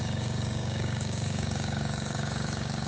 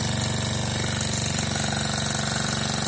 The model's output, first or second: first